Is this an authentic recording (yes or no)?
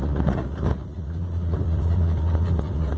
no